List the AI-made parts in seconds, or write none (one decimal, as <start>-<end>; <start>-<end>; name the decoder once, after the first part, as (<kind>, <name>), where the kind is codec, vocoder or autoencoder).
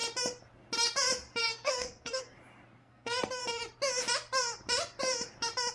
1.4-2.2 (codec, SNAC); 2.8-3.4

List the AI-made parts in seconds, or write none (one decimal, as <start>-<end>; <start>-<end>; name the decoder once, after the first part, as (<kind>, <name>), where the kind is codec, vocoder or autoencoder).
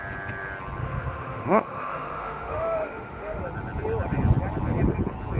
0.8-3.4 (autoencoder, DAC-VAE)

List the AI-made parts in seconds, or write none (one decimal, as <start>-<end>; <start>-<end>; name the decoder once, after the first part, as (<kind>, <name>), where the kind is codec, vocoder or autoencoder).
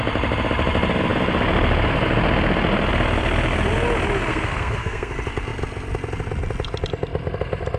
4.3-5.1 (codec, SNAC)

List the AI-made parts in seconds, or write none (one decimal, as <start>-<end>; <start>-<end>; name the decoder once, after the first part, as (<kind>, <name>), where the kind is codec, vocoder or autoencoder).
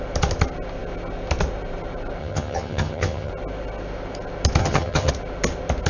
2.2-3.3 (vocoder, HiFi-GAN); 4.6-5.1